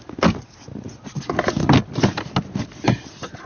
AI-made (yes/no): no